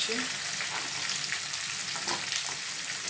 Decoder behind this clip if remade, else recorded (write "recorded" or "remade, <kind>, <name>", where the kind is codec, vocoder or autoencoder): recorded